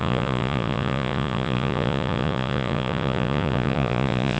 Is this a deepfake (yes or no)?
yes